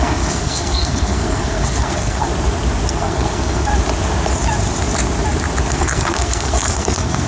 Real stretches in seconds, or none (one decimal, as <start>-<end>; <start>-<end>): 2.3-2.9; 3.7-5.7